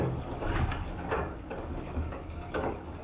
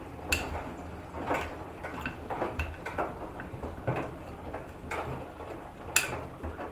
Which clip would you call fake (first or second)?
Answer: first